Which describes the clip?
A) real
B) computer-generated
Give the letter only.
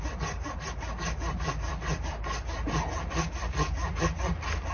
A